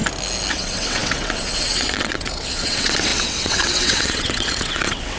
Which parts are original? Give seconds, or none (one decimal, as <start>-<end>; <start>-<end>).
0.0-0.5

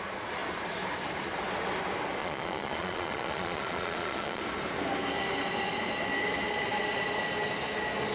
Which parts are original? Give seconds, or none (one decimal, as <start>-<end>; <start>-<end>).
0.0-2.2; 4.4-8.1

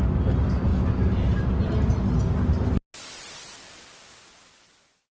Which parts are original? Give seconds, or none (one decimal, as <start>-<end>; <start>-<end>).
0.0-5.1

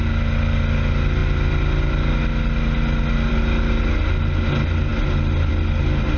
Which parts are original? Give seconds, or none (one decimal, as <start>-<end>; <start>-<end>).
0.0-6.2

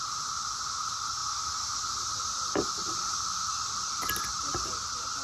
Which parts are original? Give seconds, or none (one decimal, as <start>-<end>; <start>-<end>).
0.0-5.2

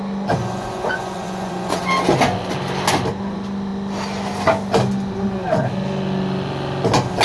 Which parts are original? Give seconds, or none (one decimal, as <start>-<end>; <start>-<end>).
0.0-0.4; 1.9-7.2